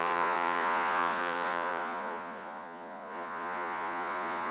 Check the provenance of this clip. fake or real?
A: fake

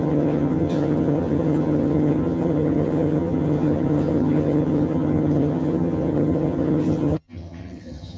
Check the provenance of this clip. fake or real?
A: fake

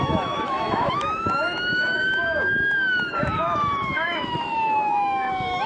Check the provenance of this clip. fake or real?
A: fake